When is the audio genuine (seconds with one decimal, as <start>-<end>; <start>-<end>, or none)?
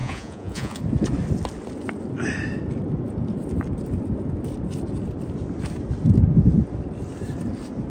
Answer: 0.8-7.9